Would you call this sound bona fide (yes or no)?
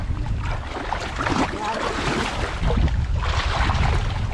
yes